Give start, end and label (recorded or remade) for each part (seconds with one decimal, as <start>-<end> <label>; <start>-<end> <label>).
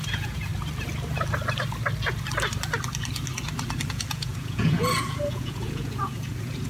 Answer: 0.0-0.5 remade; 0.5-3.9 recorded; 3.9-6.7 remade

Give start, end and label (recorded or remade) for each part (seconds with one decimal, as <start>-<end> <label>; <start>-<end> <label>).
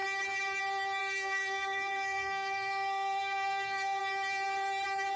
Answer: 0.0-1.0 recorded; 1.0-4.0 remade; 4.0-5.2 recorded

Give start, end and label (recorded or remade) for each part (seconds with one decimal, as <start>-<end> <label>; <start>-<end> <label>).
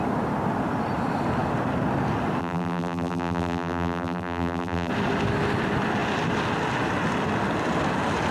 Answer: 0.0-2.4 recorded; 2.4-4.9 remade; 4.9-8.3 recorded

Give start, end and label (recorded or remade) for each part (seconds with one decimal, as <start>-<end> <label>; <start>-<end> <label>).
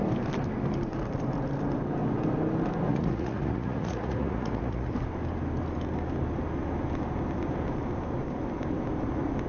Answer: 0.0-2.9 recorded; 2.9-4.9 remade; 4.9-9.5 recorded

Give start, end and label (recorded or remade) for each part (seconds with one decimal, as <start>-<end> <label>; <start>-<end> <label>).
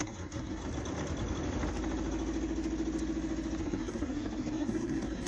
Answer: 0.0-0.6 remade; 0.6-3.6 recorded; 3.6-5.3 remade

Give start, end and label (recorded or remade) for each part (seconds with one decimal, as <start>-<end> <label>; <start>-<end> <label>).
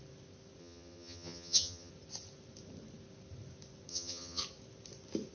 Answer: 0.0-0.6 recorded; 0.6-1.9 remade; 1.9-3.9 recorded; 3.9-4.4 remade; 4.4-5.3 recorded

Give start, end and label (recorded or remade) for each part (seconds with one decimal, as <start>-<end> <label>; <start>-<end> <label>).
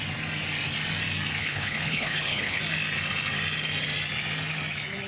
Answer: 0.0-1.4 recorded; 1.4-2.6 remade; 2.6-5.1 recorded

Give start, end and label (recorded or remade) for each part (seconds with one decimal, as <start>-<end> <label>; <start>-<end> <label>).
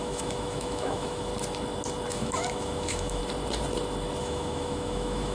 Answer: 0.0-1.3 remade; 1.3-2.1 recorded; 2.1-3.2 remade; 3.2-4.2 recorded; 4.2-5.3 remade